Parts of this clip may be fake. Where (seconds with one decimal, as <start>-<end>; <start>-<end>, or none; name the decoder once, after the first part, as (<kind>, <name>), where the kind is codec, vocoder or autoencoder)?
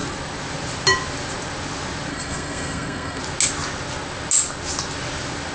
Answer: 2.1-3.2 (codec, SNAC)